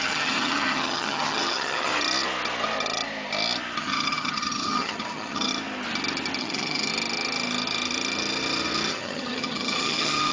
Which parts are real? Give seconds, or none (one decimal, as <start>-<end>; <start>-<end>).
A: 1.9-3.8; 5.5-6.4; 6.9-8.9